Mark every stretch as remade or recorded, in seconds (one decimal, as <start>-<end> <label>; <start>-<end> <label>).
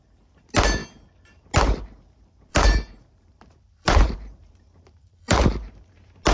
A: 0.0-2.5 recorded; 2.5-5.8 remade; 5.8-6.3 recorded